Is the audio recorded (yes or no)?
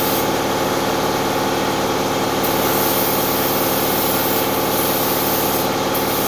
yes